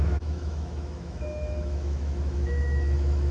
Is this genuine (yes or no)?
no